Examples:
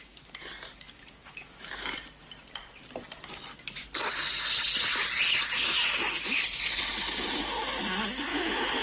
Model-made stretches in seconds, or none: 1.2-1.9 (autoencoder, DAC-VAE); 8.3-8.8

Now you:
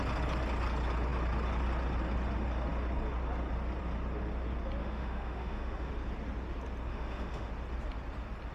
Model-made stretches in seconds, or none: 4.8-5.9 (autoencoder, DAC-VAE); 6.9-7.5

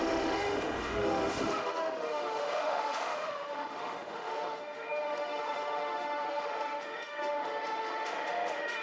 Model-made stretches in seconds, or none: 0.0-8.8 (autoencoder, DAC-VAE)

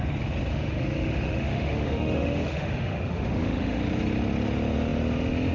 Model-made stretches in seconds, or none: 0.5-3.8 (autoencoder, DAC-VAE)

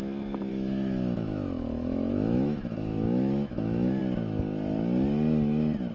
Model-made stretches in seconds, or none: 0.5-4.0 (autoencoder, DAC-VAE)

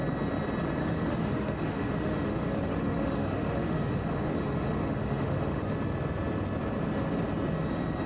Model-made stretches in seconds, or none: 0.8-5.7 (autoencoder, DAC-VAE)

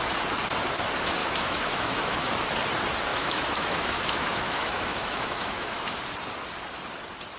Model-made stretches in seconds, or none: 1.2-2.3 (autoencoder, DAC-VAE); 3.1-6.0

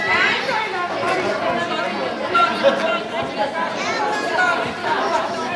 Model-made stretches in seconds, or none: 4.8-5.6 (autoencoder, DAC-VAE)